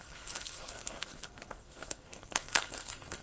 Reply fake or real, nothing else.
fake